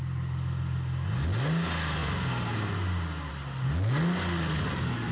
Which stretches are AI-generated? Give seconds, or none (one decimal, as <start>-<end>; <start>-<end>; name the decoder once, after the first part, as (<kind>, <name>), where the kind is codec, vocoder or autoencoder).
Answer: none